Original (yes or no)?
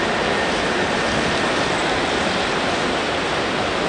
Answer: no